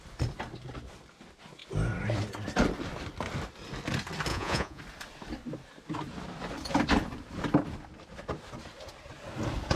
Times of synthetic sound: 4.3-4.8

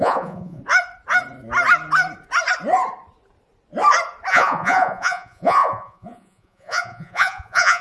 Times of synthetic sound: 0.0-0.6; 4.3-7.8

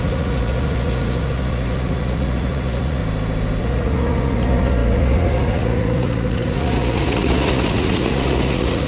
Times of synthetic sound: 0.0-3.0; 3.6-8.9

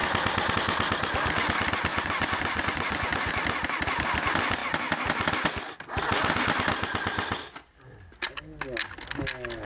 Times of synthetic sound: 1.9-3.3

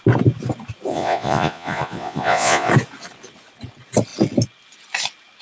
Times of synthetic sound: 0.9-2.7

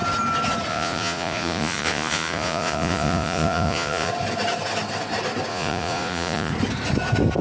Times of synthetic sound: 0.7-4.1; 5.5-6.5

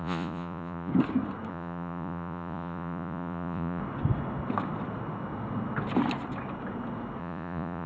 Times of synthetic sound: 0.0-0.9; 1.5-3.8; 7.2-7.9